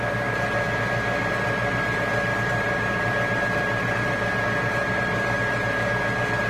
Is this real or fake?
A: real